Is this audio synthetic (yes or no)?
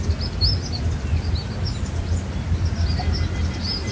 no